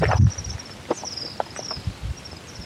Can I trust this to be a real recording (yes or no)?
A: yes